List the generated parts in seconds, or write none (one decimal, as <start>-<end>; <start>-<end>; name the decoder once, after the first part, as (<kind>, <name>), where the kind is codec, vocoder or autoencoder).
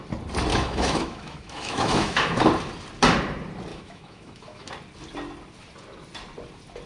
0.5-2.4 (autoencoder, DAC-VAE); 3.7-4.7